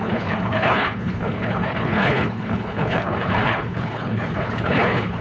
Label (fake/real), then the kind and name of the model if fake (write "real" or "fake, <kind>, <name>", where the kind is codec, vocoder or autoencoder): fake, codec, HILCodec